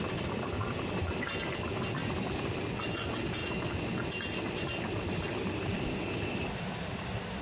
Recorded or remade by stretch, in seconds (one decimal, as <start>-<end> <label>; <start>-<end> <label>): 0.0-7.4 recorded